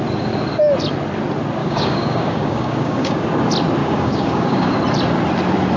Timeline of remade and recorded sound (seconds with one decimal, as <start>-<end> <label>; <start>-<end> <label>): 0.0-1.6 recorded; 1.6-3.3 remade; 3.3-3.8 recorded; 3.8-4.7 remade; 4.7-5.8 recorded